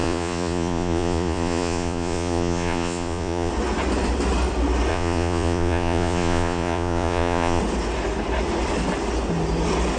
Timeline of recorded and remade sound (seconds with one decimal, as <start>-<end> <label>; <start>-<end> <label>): 0.0-3.5 remade; 3.5-4.9 recorded; 4.9-7.6 remade; 7.6-10.0 recorded